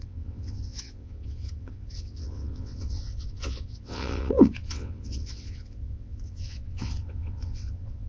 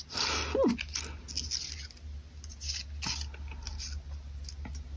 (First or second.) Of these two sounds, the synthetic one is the first